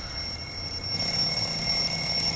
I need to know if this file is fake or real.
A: real